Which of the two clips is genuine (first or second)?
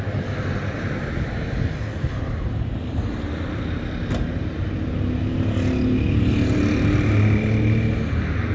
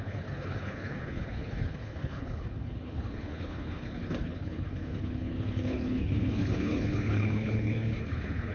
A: first